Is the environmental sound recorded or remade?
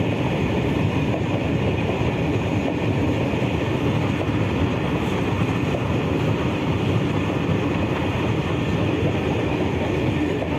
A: recorded